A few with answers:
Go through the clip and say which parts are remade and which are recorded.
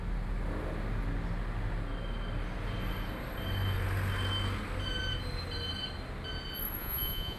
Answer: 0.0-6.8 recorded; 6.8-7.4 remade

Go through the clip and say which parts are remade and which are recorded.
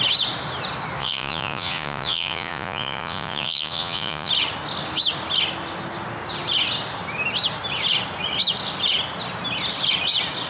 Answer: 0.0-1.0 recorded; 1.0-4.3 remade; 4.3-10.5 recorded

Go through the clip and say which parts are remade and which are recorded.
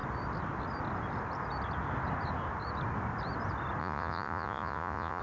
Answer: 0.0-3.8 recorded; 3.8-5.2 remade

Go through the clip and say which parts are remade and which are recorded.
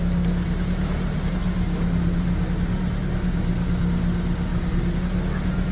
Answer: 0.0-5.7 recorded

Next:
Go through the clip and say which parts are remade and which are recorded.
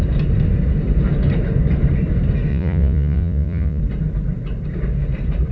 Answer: 0.0-2.5 recorded; 2.5-3.8 remade; 3.8-5.5 recorded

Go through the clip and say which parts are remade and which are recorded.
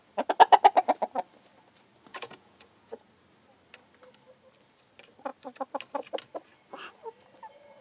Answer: 0.0-2.1 recorded; 2.1-3.1 remade; 3.1-7.8 recorded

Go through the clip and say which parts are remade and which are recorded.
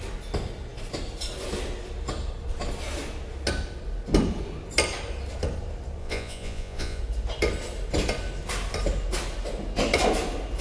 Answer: 0.0-6.0 recorded; 6.0-7.0 remade; 7.0-10.6 recorded